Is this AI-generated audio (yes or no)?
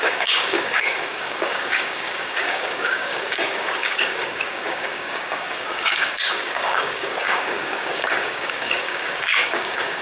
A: yes